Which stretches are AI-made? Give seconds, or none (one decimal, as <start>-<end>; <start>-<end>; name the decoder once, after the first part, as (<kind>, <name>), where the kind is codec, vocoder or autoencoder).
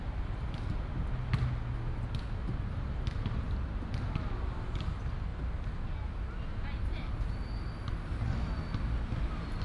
none